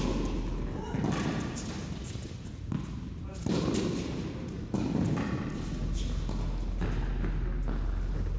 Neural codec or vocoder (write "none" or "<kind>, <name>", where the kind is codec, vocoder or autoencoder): none